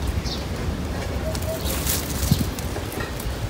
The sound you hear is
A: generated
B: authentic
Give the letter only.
B